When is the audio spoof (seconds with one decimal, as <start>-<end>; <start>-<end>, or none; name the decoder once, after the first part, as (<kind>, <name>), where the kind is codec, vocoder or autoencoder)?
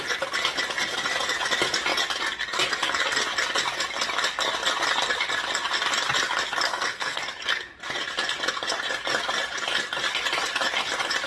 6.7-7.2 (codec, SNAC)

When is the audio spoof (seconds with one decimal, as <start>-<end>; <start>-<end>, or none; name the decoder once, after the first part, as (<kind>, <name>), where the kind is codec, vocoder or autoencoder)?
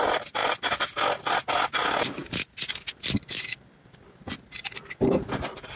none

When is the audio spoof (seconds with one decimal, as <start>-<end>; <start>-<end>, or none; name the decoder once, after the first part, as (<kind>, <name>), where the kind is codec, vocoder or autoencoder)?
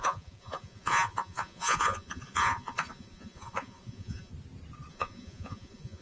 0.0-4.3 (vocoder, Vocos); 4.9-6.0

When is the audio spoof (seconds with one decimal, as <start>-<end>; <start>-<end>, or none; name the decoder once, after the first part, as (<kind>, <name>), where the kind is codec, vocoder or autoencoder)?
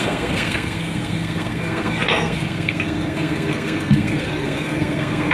0.0-5.3 (codec, SNAC)